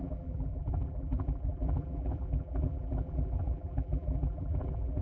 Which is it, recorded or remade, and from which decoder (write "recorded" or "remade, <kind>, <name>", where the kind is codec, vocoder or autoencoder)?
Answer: remade, vocoder, BigVGAN v2